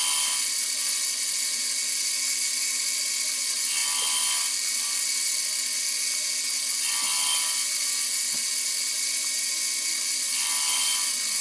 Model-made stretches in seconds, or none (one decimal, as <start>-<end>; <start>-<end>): none